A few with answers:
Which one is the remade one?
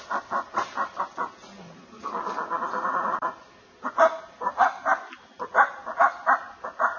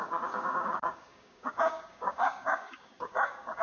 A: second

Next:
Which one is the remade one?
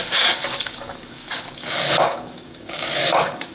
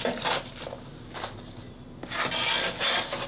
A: first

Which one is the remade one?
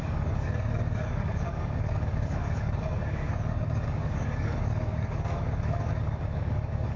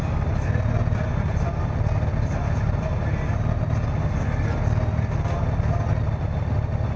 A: first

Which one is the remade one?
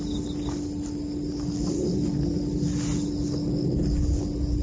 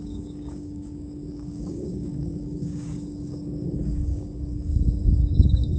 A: second